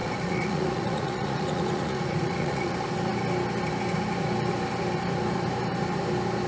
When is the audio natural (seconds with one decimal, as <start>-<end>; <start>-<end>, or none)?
2.7-6.5